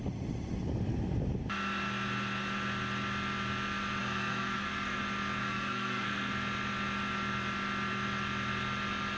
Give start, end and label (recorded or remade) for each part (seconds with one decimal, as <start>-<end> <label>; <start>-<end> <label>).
0.0-4.0 recorded; 4.0-5.0 remade; 5.0-5.4 recorded; 5.4-6.3 remade; 6.3-9.2 recorded